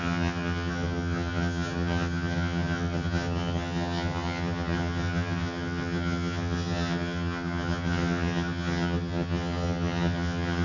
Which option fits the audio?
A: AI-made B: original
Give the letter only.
A